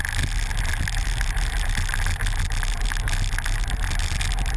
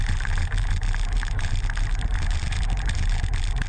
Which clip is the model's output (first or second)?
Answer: second